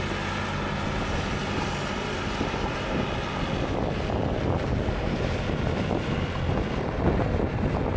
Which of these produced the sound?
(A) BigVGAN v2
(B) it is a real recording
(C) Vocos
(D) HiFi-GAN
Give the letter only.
B